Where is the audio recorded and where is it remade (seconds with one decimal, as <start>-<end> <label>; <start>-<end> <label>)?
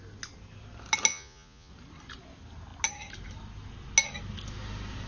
0.0-1.1 recorded; 1.1-1.7 remade; 1.7-5.1 recorded